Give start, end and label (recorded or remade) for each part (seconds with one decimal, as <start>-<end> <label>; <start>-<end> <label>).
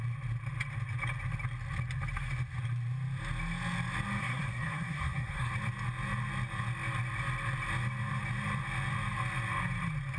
0.0-4.2 recorded; 4.2-5.5 remade; 5.5-10.2 recorded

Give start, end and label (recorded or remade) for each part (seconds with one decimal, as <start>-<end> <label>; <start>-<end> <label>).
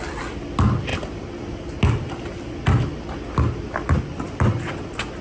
0.0-5.2 recorded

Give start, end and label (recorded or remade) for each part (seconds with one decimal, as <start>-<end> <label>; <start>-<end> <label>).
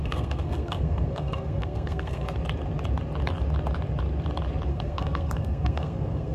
0.0-2.4 remade; 2.4-4.7 recorded; 4.7-6.3 remade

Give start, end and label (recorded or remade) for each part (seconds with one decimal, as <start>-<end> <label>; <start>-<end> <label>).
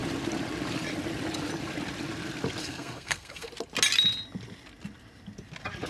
0.0-2.6 recorded; 2.6-3.5 remade; 3.5-5.9 recorded